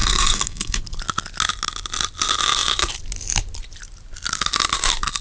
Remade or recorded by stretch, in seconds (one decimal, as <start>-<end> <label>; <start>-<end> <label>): 0.0-0.8 remade; 0.8-5.2 recorded